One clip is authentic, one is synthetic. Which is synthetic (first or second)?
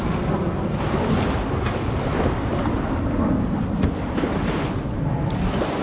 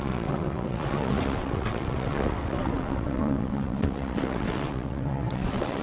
second